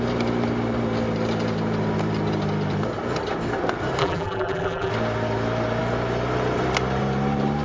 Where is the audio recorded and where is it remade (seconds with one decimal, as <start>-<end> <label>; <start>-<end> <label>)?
0.0-4.0 recorded; 4.0-4.9 remade; 4.9-7.6 recorded